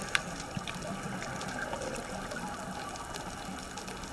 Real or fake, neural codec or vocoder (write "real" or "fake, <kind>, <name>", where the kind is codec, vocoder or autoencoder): real